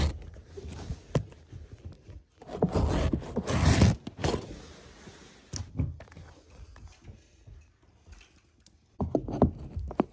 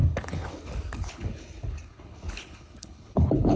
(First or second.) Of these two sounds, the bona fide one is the first